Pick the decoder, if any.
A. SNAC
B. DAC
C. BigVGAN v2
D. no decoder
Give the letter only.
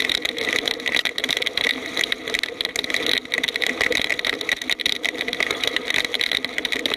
D